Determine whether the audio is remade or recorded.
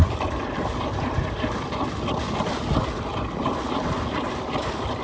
recorded